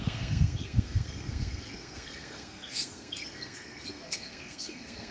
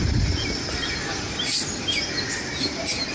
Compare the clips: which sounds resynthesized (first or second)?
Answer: first